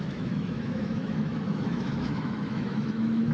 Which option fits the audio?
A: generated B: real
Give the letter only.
A